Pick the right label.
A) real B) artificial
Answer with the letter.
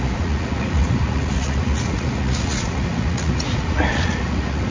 B